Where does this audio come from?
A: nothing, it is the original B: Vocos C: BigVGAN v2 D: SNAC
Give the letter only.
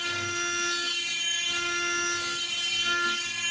A